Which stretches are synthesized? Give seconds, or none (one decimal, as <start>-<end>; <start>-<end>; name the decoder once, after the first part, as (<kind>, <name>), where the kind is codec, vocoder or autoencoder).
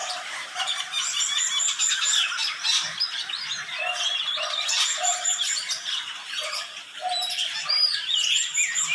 0.0-2.4 (vocoder, BigVGAN v2); 4.7-8.9